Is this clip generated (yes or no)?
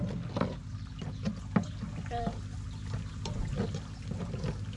no